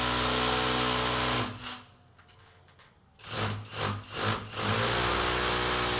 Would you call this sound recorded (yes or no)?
yes